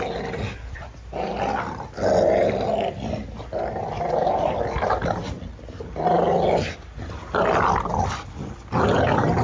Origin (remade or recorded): recorded